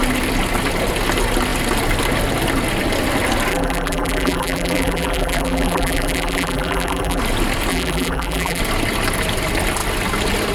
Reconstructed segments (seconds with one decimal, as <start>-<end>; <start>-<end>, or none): 3.5-7.2; 7.7-8.6